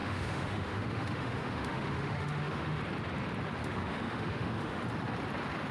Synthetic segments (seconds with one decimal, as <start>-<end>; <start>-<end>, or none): 0.0-2.8; 3.6-4.8